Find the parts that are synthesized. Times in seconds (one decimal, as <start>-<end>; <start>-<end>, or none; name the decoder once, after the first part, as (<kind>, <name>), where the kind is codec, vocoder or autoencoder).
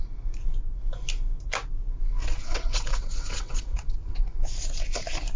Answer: 2.2-4.4 (vocoder, WaveNeXt)